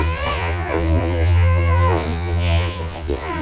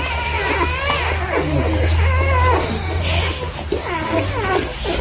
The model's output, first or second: first